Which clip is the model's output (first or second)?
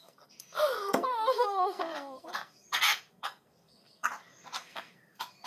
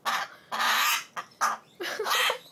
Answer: first